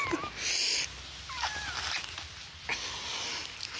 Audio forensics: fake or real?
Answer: real